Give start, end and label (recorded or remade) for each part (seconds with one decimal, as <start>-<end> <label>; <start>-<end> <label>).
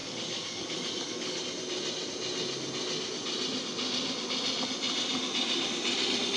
0.0-1.4 remade; 1.4-6.4 recorded